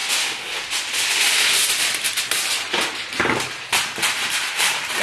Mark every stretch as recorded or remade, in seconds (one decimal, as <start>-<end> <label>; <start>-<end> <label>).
0.0-3.0 recorded; 3.0-5.0 remade